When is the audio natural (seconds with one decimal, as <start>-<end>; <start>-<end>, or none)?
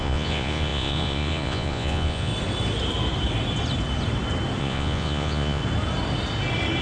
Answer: 2.3-4.6; 5.6-6.8